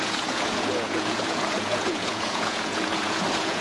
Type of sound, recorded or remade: remade